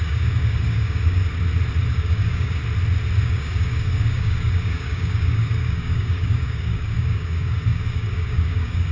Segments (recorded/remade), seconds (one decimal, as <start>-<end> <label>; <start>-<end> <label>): 0.0-1.2 remade; 1.2-1.9 recorded; 1.9-2.6 remade; 2.6-3.2 recorded; 3.2-8.9 remade